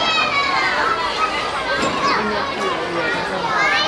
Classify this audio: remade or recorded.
recorded